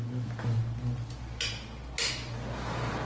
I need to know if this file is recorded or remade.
recorded